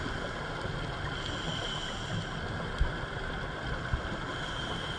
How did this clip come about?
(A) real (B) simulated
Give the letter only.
A